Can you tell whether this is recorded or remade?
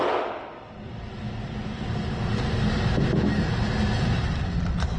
recorded